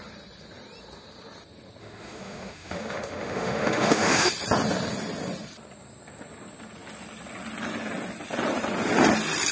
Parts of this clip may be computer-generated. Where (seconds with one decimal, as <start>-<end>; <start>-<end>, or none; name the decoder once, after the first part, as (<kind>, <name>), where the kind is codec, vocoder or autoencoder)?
1.8-4.3 (autoencoder, DAC-VAE)